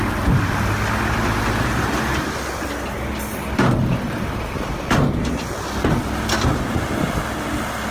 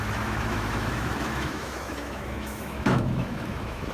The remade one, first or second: second